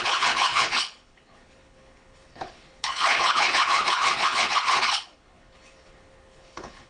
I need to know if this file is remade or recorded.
remade